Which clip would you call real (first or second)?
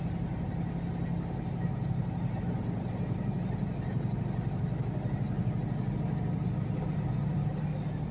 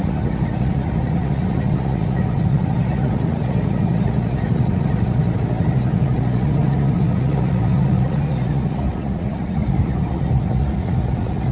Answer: first